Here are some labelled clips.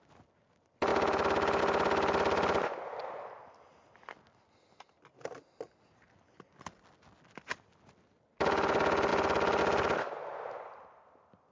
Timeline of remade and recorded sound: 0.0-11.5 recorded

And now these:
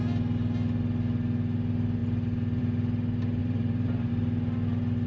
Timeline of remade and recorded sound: 0.0-3.4 recorded; 3.4-4.1 remade; 4.1-5.1 recorded

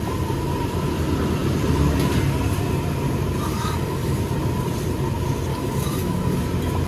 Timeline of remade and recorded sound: 0.0-3.5 recorded; 3.5-4.2 remade; 4.2-5.5 recorded; 5.5-6.4 remade; 6.4-6.9 recorded

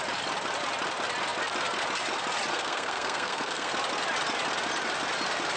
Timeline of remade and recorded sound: 0.0-2.5 recorded; 2.5-3.7 remade; 3.7-5.6 recorded

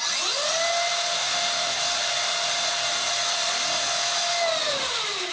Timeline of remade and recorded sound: 0.0-0.9 recorded; 0.9-2.5 remade; 2.5-4.6 recorded; 4.6-5.3 remade